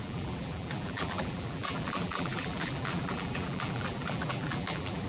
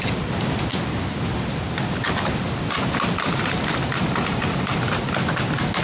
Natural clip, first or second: second